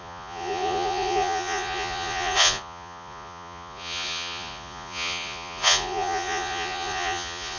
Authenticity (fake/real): fake